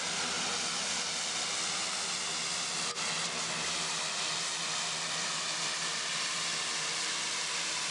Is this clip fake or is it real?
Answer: real